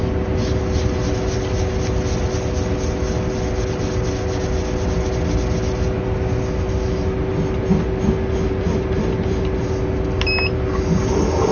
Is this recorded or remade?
recorded